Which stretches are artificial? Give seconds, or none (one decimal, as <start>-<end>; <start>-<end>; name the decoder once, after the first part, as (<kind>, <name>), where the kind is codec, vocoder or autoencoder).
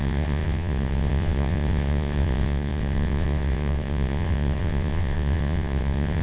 0.0-6.2 (vocoder, WaveNeXt)